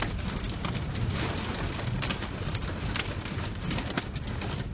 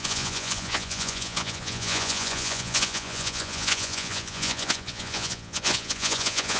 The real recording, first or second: first